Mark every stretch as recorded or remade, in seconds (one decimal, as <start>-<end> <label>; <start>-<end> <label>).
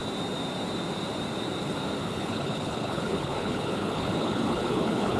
0.0-2.0 recorded; 2.0-5.2 remade